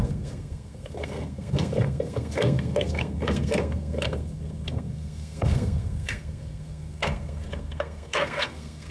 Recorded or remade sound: remade